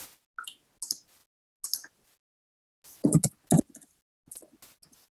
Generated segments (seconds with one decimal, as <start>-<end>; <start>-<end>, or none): none